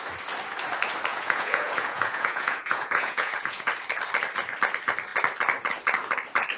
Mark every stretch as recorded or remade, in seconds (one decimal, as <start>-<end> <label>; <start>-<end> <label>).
0.0-1.1 recorded; 1.1-3.7 remade; 3.7-6.6 recorded